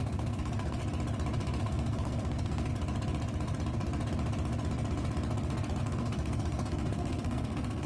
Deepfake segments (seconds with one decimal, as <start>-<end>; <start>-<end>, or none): 0.0-0.8; 1.6-2.7; 5.8-7.9